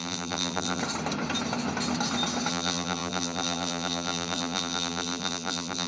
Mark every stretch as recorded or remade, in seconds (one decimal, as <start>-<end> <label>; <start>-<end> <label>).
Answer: 0.0-0.8 remade; 0.8-2.5 recorded; 2.5-5.9 remade